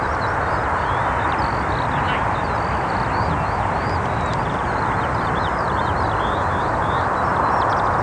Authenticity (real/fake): real